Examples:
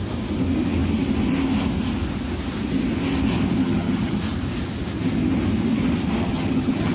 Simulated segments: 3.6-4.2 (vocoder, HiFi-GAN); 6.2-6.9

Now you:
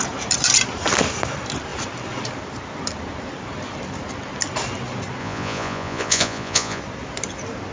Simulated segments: 5.2-6.8 (vocoder, Vocos)